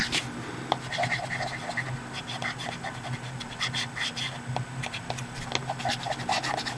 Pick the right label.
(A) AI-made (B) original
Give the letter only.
B